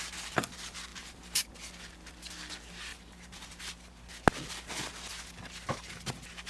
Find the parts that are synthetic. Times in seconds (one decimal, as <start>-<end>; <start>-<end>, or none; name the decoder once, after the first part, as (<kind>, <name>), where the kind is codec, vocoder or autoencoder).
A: 0.9-1.5 (vocoder, BigVGAN v2); 2.9-3.6